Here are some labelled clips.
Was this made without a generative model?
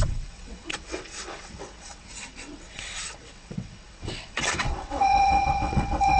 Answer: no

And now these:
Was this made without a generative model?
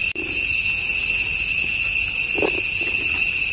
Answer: yes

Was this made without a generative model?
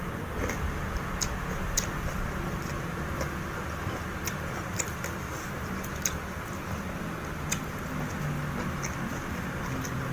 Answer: yes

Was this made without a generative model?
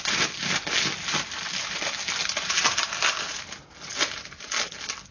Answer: yes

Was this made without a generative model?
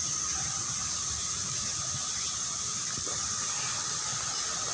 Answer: yes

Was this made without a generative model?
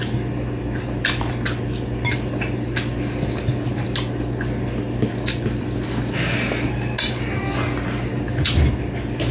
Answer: yes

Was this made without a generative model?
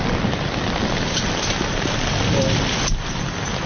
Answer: yes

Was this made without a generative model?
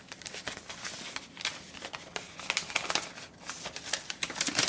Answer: yes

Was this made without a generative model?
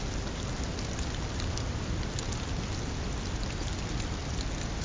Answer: yes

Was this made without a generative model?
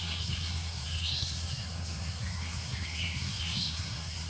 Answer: no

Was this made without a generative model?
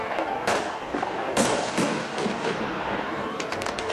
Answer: no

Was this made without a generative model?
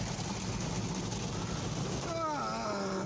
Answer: yes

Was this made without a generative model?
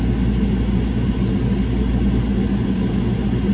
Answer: yes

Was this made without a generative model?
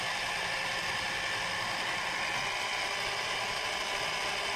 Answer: yes